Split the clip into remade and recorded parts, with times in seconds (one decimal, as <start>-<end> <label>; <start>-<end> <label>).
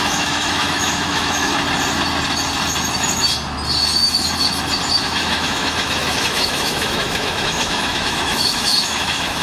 0.0-1.5 remade; 1.5-5.0 recorded; 5.0-9.4 remade